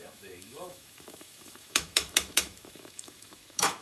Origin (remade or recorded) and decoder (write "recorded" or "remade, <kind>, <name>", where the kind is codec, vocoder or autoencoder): remade, autoencoder, DAC-VAE